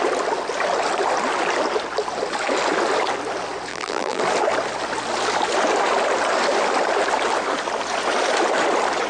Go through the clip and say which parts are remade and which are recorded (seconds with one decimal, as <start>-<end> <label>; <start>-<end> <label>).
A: 0.0-3.7 recorded; 3.7-4.2 remade; 4.2-9.1 recorded